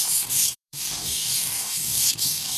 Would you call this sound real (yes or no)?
no